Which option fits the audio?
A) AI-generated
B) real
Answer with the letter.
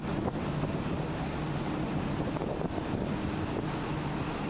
B